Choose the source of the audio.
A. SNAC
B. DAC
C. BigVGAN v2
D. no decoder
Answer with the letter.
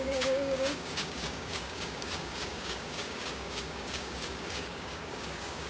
B